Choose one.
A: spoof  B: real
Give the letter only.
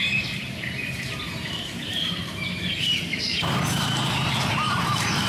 A